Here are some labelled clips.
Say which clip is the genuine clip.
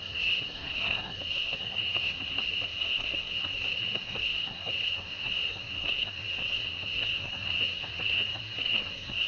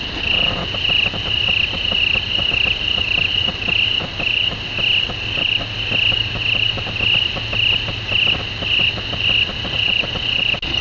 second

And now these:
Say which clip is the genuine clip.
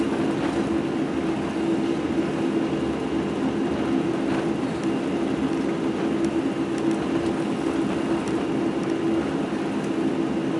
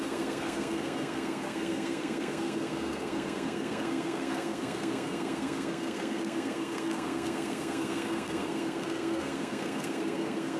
first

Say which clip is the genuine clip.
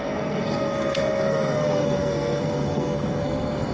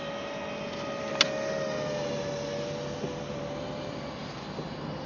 second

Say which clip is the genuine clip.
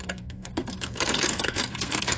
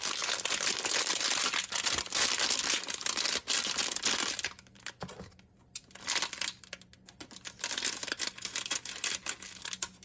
second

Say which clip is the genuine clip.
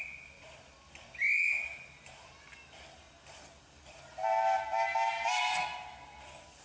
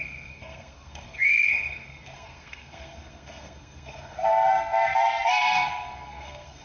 first